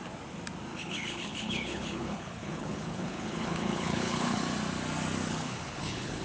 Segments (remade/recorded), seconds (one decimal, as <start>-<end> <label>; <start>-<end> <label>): 0.0-0.7 recorded; 0.7-4.4 remade; 4.4-5.3 recorded; 5.3-6.2 remade